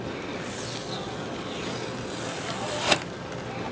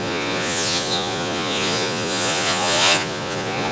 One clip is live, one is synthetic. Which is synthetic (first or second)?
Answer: second